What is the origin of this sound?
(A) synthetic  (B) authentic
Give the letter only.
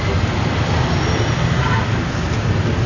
B